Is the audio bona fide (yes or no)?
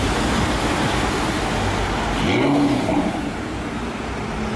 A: yes